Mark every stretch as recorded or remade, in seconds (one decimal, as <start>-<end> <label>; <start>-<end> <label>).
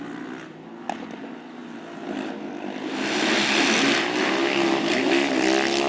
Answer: 0.0-5.9 recorded